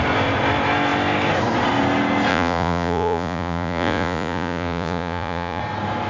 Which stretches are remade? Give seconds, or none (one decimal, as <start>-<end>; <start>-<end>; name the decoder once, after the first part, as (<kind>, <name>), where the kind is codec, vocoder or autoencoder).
2.3-5.6 (vocoder, Vocos)